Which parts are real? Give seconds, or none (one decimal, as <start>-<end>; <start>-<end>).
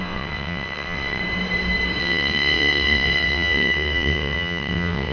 1.2-2.0